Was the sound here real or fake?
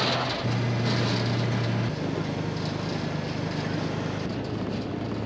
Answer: real